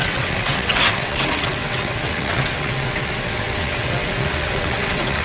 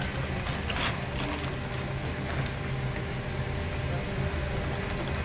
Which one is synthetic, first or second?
first